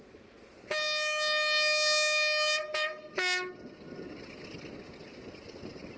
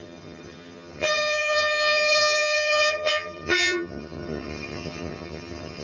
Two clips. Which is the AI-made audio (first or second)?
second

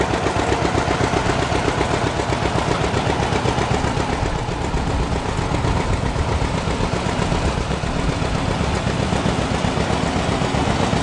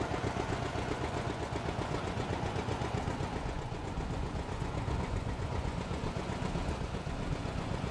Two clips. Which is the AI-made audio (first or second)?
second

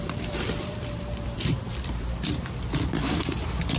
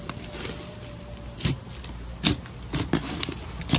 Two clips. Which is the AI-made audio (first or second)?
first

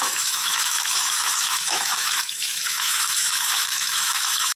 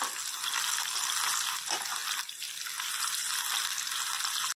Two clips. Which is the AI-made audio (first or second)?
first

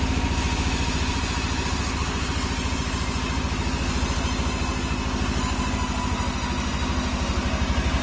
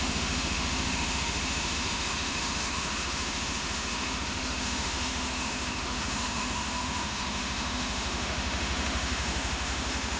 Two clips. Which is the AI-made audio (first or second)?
second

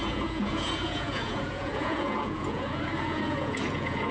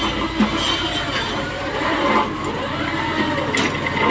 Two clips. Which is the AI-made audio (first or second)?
first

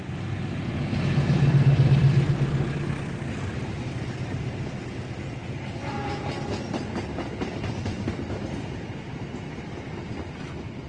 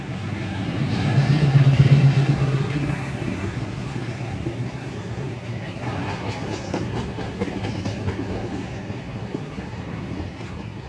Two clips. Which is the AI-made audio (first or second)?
second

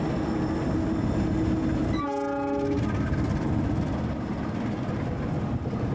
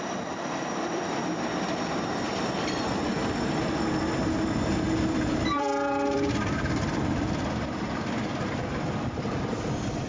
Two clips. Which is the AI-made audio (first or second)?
second